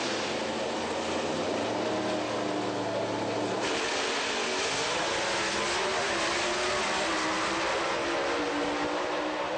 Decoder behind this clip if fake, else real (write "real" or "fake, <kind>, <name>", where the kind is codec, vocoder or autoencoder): real